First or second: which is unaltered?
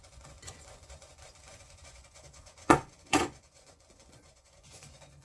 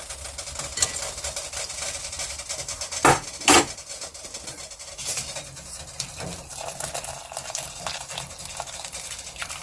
second